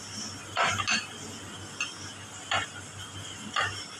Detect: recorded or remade recorded